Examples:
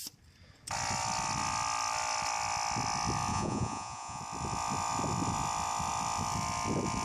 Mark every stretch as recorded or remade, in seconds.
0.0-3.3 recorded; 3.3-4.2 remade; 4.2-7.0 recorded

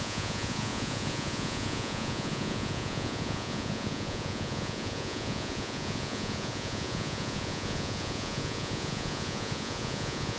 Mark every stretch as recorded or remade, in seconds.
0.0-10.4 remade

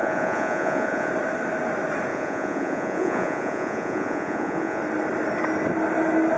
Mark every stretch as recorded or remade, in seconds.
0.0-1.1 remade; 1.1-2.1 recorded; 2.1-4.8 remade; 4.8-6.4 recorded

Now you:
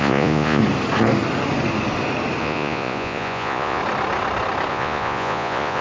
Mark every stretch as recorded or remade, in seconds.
0.0-0.6 remade; 0.6-2.4 recorded; 2.4-3.8 remade; 3.8-4.7 recorded; 4.7-5.8 remade